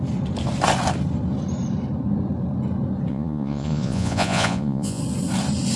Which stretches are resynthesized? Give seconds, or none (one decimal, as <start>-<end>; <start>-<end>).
3.1-5.0